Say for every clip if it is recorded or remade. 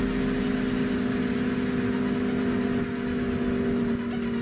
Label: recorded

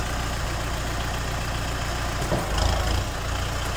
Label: recorded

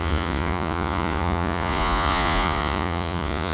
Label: remade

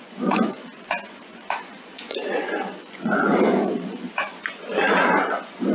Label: remade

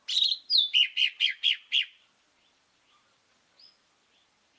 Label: recorded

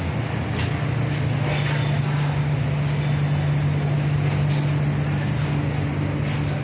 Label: recorded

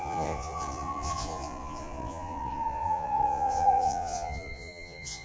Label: remade